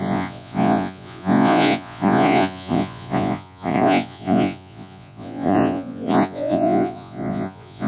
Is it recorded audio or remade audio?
remade